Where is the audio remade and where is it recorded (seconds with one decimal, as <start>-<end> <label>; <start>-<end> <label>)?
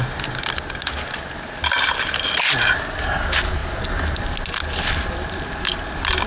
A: 0.0-6.3 recorded